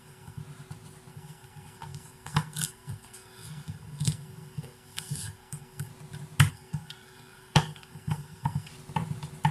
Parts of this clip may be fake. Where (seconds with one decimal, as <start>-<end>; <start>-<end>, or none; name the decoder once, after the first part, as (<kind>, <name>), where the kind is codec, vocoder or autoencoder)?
0.0-0.4 (codec, SNAC); 1.1-5.9; 6.5-8.7